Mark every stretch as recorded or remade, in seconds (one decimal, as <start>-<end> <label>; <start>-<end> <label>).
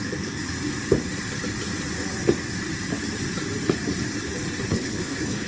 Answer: 0.0-4.7 recorded; 4.7-5.5 remade